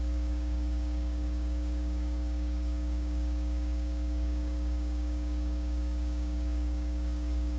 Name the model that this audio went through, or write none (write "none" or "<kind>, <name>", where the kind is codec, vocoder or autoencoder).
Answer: codec, DAC